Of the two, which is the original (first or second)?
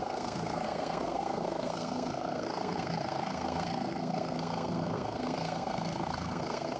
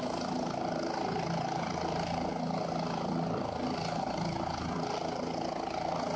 second